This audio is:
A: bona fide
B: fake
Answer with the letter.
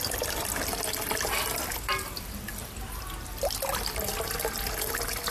A